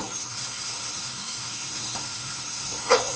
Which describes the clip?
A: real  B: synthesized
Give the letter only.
B